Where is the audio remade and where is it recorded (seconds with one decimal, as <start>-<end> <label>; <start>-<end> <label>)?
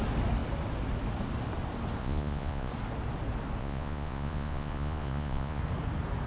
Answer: 0.0-2.0 recorded; 2.0-2.7 remade; 2.7-3.6 recorded; 3.6-5.6 remade; 5.6-6.3 recorded